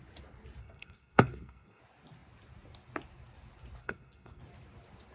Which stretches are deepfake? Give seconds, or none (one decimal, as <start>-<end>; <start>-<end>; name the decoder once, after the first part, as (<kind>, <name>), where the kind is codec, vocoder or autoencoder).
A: 0.6-1.8 (codec, SNAC); 3.8-4.4